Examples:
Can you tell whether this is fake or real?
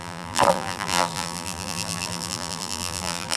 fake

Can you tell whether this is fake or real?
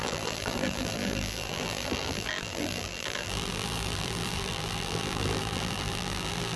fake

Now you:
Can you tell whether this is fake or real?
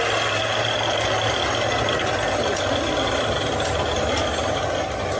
real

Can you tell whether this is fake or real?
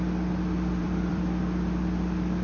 fake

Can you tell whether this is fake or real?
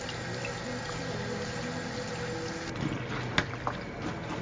real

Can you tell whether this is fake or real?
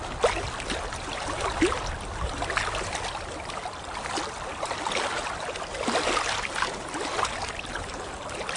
real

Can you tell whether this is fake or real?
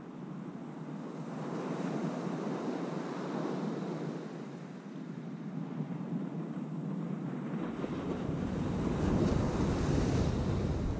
real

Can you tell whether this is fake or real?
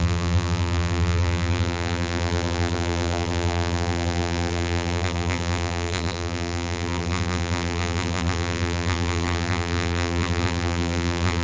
fake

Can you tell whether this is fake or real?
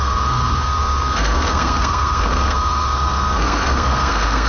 fake